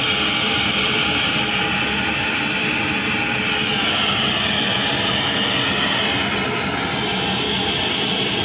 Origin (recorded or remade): recorded